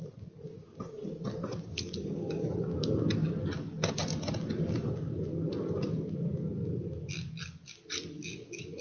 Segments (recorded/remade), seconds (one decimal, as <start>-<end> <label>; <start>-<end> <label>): 0.0-1.7 recorded; 1.7-2.6 remade; 2.6-8.8 recorded